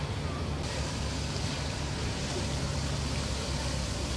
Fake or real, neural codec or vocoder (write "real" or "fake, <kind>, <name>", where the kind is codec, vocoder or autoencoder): real